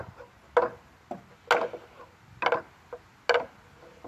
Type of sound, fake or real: real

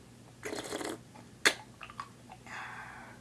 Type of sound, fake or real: real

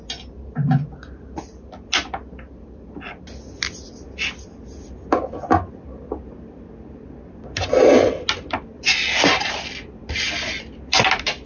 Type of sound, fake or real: real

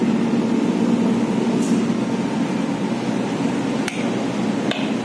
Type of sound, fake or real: real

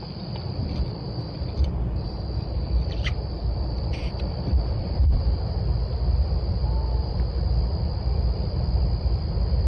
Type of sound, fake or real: fake